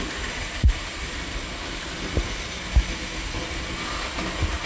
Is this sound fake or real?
real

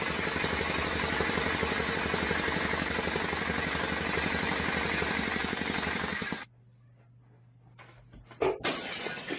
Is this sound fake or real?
real